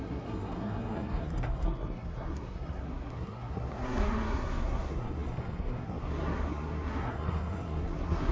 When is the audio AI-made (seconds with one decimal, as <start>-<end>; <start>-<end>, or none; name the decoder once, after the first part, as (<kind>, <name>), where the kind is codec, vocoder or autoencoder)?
0.0-8.3 (codec, SNAC)